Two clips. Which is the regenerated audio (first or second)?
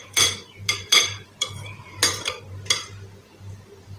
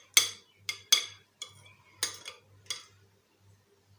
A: first